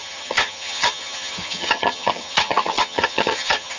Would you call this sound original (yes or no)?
no